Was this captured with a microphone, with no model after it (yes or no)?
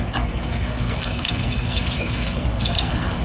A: no